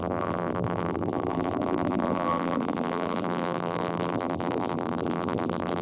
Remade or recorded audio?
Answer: remade